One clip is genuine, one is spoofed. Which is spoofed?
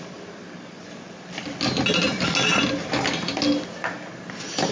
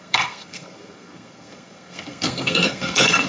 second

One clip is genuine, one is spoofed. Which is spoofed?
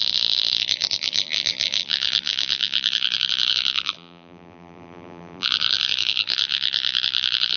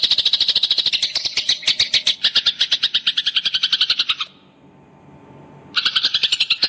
first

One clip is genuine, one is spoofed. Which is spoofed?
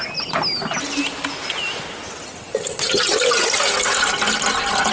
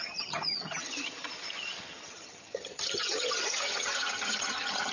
second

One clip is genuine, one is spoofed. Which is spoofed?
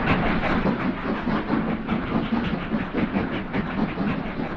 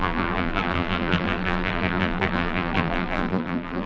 second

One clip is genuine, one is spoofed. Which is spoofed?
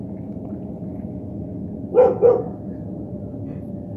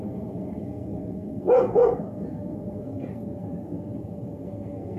second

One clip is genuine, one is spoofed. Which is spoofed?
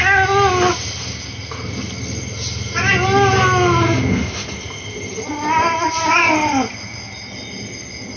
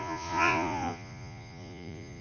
second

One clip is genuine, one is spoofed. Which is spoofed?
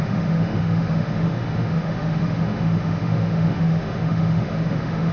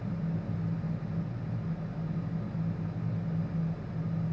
first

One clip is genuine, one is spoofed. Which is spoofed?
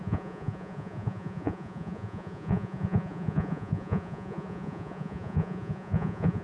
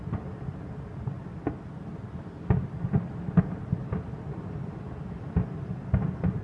first